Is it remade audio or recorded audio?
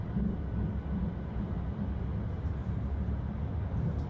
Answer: recorded